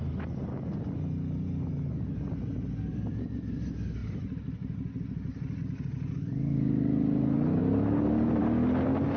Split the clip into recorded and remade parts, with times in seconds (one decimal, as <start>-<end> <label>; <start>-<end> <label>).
0.0-9.2 recorded